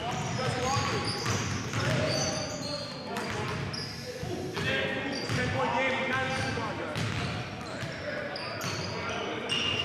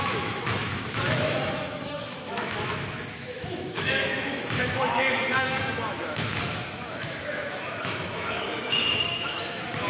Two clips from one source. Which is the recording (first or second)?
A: first